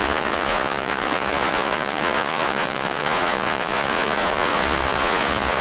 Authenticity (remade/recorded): remade